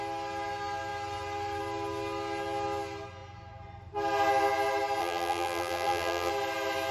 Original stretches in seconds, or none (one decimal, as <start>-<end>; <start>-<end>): 0.0-5.0; 6.3-6.9